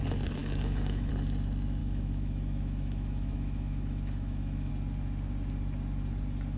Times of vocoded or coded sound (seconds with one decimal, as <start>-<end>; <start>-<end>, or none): 0.4-1.1; 1.8-4.7